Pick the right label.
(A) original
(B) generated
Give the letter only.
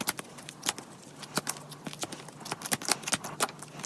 A